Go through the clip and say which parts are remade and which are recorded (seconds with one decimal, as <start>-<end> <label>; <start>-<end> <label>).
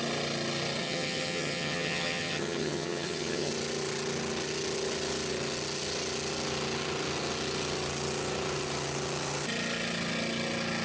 0.0-0.8 recorded; 0.8-3.5 remade; 3.5-10.8 recorded